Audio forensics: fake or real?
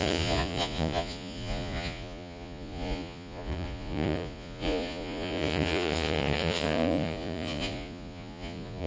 fake